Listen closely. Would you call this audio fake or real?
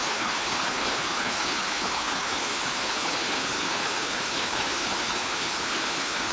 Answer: fake